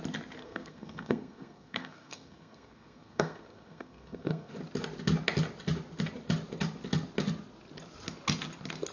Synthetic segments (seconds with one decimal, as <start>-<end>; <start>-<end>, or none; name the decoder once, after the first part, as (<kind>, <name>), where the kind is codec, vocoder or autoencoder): 0.4-4.5 (codec, SNAC)